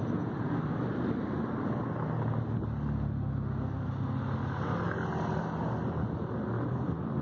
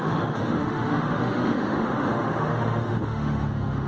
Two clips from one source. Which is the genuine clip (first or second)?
first